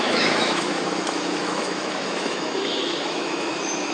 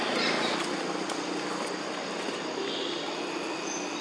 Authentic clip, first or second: second